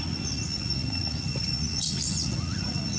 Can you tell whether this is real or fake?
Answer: fake